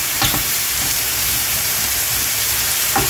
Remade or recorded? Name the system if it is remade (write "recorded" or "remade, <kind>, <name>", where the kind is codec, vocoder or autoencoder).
remade, vocoder, BigVGAN v2